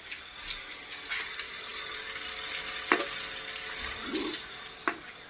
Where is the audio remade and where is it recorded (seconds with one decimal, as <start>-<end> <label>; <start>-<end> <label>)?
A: 0.0-1.7 recorded; 1.7-3.0 remade; 3.0-5.3 recorded